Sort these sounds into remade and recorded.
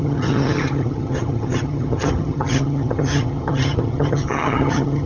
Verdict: remade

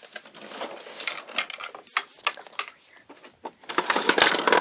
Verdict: recorded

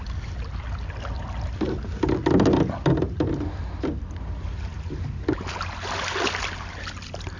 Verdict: recorded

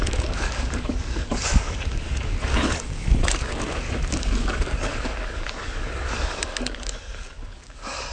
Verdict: remade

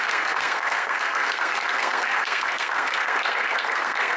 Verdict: remade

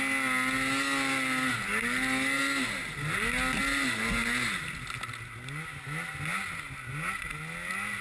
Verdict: recorded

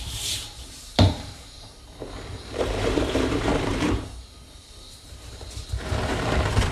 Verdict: remade